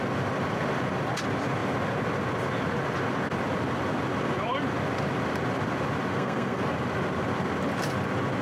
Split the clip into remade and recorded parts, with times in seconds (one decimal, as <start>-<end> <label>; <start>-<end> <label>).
0.0-6.1 recorded; 6.1-6.6 remade; 6.6-8.4 recorded